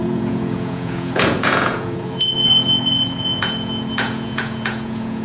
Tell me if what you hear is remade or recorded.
remade